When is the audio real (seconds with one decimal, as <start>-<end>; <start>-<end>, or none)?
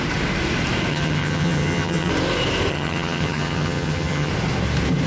0.0-0.9; 2.1-2.7; 4.3-5.1